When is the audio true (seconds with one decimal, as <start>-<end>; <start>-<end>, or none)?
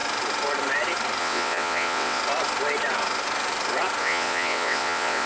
0.0-1.2; 2.2-4.0